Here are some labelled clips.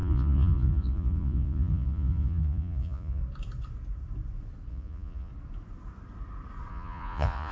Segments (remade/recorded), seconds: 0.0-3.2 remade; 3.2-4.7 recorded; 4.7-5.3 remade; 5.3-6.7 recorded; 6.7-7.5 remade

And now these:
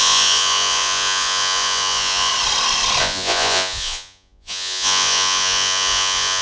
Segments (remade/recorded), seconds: 0.0-2.3 remade; 2.3-3.0 recorded; 3.0-6.4 remade

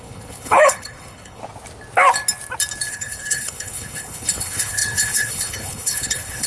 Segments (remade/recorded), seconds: 0.0-1.4 remade; 1.4-2.9 recorded; 2.9-6.5 remade

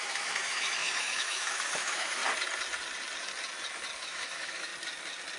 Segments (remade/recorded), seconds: 0.0-2.2 remade; 2.2-4.0 recorded; 4.0-4.7 remade; 4.7-5.4 recorded

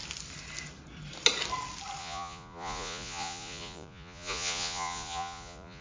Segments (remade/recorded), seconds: 0.0-2.0 recorded; 2.0-5.8 remade

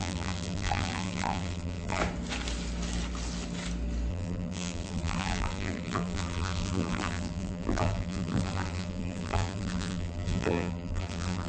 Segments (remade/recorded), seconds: 0.0-2.0 remade; 2.0-4.1 recorded; 4.1-11.5 remade

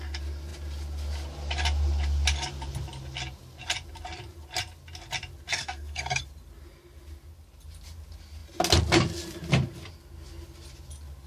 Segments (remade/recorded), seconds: 0.0-5.5 recorded; 5.5-6.2 remade; 6.2-11.3 recorded

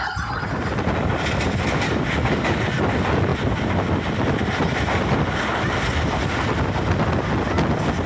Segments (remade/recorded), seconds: 0.0-8.1 recorded